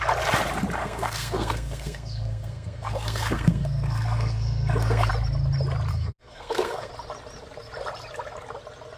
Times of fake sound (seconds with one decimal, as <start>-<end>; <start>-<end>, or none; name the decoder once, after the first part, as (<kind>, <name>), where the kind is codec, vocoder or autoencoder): 0.8-5.1 (codec, SNAC); 5.9-6.9